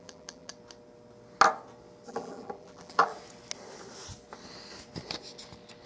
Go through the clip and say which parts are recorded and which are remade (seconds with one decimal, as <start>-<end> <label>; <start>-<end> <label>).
0.0-0.5 remade; 0.5-2.1 recorded; 2.1-3.1 remade; 3.1-5.9 recorded

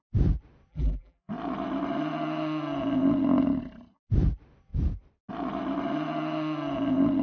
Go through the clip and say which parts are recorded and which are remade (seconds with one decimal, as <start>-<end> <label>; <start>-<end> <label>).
0.0-0.7 recorded; 0.7-1.3 remade; 1.3-7.2 recorded

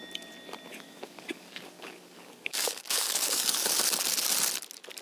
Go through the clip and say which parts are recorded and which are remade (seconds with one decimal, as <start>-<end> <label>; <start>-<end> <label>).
0.0-0.7 recorded; 0.7-3.7 remade; 3.7-5.0 recorded

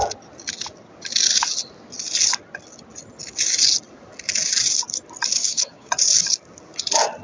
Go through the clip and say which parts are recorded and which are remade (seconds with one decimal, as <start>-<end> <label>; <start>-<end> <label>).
0.0-5.4 recorded; 5.4-5.9 remade; 5.9-7.2 recorded

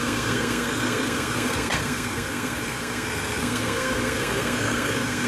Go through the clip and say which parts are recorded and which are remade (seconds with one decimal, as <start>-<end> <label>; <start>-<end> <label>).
0.0-5.3 remade

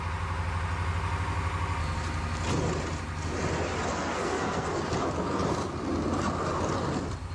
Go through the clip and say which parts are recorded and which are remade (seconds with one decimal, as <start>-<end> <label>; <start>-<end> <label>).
0.0-3.9 recorded; 3.9-4.8 remade; 4.8-7.3 recorded

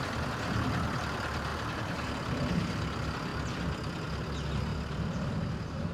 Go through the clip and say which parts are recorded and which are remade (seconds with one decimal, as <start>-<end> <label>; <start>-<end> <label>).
0.0-4.7 recorded; 4.7-5.5 remade; 5.5-5.9 recorded